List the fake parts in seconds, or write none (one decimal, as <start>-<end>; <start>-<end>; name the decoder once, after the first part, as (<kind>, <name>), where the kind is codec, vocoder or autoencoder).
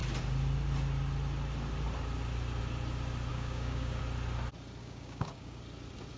3.3-4.0 (codec, DAC); 4.8-5.6